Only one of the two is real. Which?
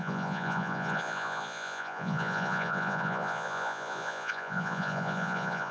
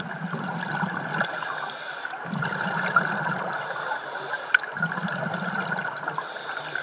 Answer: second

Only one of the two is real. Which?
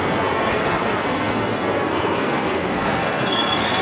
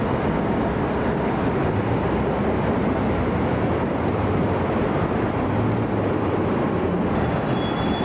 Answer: second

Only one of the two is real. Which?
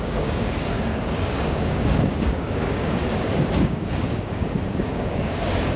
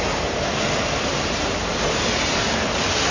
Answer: second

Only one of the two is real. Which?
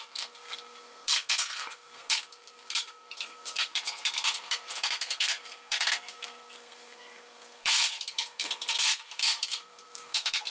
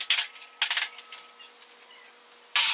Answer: second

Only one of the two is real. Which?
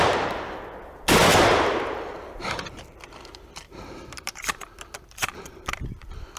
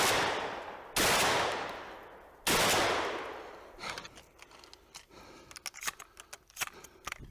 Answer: second